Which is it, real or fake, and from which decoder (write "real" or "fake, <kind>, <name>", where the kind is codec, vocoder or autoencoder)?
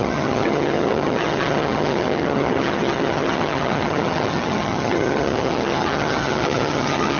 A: fake, vocoder, HiFi-GAN